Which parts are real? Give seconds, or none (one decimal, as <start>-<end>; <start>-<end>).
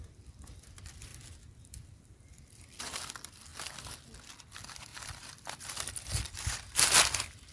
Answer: 1.1-1.6; 3.5-4.4